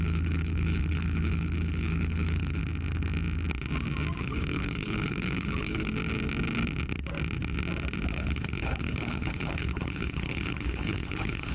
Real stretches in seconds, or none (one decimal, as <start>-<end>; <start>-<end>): 2.6-4.2; 5.9-8.1